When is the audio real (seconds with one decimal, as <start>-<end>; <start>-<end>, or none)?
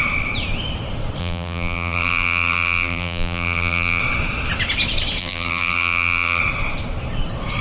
0.0-1.2; 4.0-5.2; 6.4-7.6